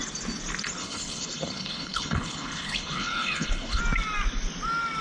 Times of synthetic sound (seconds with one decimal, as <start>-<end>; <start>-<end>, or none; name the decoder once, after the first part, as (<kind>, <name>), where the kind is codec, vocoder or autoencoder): 0.8-3.8 (codec, HILCodec)